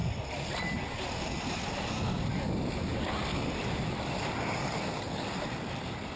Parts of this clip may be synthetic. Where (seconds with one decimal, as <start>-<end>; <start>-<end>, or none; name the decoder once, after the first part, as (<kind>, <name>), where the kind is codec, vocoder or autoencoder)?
none